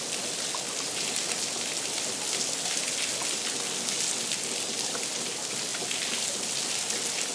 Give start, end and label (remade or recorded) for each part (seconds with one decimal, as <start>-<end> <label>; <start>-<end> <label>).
0.0-7.3 recorded